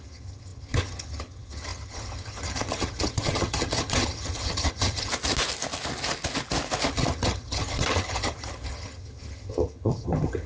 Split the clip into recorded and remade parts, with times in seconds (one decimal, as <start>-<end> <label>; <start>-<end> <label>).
0.0-5.1 remade; 5.1-6.9 recorded; 6.9-10.5 remade